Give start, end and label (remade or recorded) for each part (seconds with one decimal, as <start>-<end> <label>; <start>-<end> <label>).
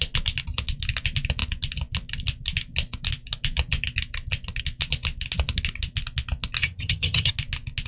0.0-6.6 recorded; 6.6-7.3 remade; 7.3-7.9 recorded